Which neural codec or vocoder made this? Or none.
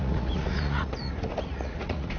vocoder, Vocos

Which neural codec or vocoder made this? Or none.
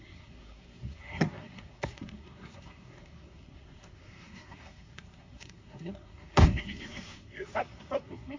codec, SNAC